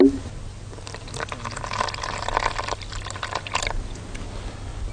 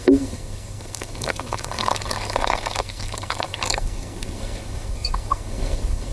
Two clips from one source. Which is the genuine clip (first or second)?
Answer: first